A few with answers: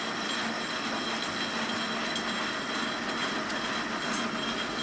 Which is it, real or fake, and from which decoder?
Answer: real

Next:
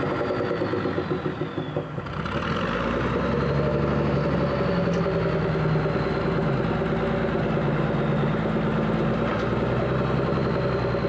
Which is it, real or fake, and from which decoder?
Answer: real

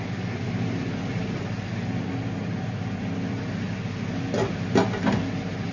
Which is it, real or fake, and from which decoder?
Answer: real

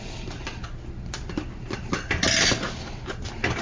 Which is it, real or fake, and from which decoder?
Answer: real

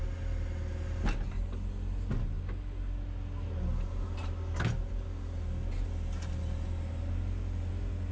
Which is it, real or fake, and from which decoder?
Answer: real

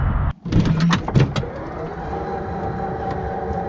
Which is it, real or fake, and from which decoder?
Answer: real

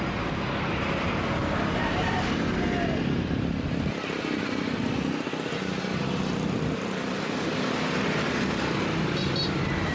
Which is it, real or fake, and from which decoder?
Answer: real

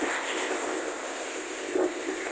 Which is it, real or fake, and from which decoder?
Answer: fake, codec, ZipCodec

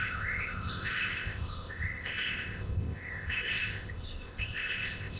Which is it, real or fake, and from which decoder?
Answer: fake, codec, ZipCodec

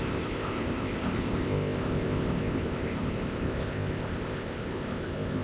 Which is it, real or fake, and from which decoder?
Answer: fake, codec, ZipCodec